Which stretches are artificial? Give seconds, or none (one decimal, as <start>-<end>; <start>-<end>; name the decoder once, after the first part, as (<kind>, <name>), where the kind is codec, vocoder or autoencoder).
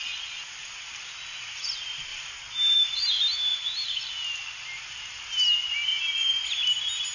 2.1-3.1 (vocoder, BigVGAN v2); 3.5-4.1